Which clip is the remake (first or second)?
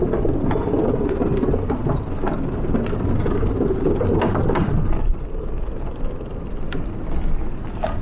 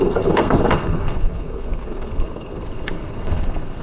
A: second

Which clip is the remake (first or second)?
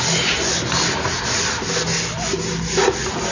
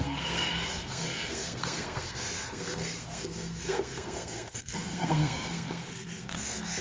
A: second